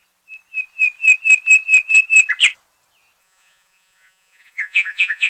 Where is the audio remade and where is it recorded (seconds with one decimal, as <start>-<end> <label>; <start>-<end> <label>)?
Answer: 0.0-3.2 recorded; 3.2-5.3 remade